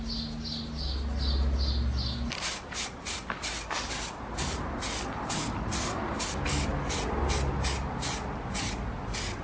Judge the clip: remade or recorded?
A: recorded